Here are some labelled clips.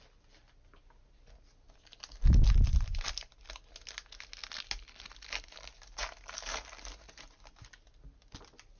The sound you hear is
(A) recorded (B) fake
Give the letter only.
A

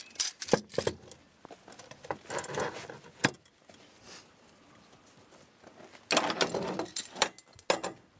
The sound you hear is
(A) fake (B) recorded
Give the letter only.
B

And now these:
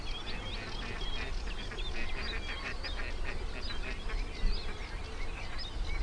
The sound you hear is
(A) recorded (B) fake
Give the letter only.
A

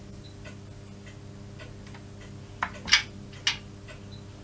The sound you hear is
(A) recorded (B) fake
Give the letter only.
A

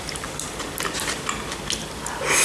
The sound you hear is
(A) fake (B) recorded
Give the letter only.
B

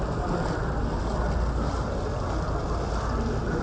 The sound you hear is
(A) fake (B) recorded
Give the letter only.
B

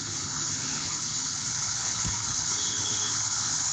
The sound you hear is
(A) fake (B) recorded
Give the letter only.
A